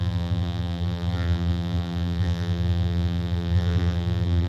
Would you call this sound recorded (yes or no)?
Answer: no